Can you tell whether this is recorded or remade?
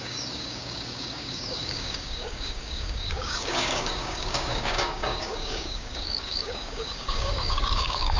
remade